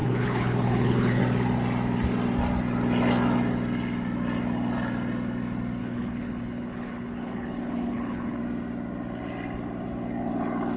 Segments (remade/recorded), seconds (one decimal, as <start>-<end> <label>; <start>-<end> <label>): 0.0-1.2 remade; 1.2-5.8 recorded; 5.8-8.4 remade; 8.4-10.8 recorded